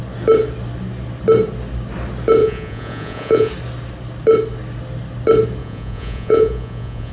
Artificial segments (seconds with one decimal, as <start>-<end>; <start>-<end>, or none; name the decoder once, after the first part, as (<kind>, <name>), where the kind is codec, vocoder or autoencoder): 2.4-3.5 (vocoder, Vocos); 5.6-7.1